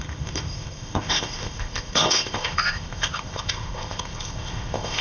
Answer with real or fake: fake